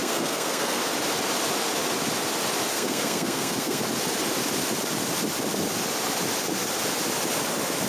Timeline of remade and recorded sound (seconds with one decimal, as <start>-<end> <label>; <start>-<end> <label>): 0.0-0.8 remade; 0.8-2.7 recorded; 2.7-3.8 remade; 3.8-7.9 recorded